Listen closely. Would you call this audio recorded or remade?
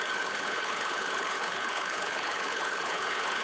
remade